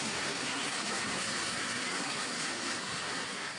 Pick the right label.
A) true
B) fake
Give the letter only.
B